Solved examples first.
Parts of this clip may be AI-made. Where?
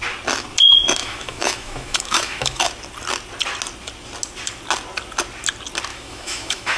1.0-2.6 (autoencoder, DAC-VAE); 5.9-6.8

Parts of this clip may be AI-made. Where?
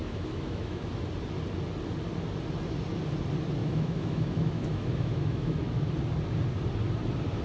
0.0-0.9 (autoencoder, DAC-VAE); 3.6-5.9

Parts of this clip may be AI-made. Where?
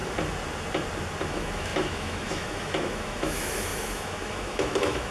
1.2-5.1 (autoencoder, DAC-VAE)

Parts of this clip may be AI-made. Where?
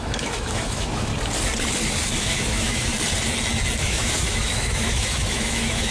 0.0-1.1 (autoencoder, DAC-VAE); 2.2-2.9; 3.8-5.9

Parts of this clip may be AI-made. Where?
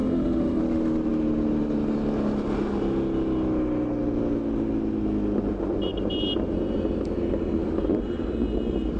0.0-0.6 (autoencoder, DAC-VAE)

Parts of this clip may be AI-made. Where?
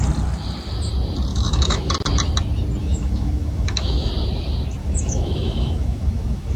1.3-1.9 (autoencoder, DAC-VAE); 2.8-4.1; 4.8-6.6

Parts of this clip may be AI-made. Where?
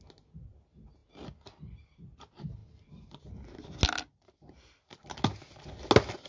none